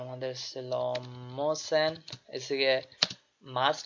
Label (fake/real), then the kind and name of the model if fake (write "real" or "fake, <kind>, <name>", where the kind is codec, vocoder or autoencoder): real